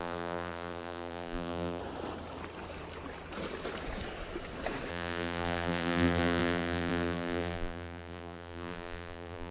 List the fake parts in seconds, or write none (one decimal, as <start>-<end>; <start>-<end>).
0.0-1.8; 4.9-9.5